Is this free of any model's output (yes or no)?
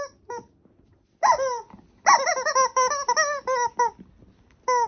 yes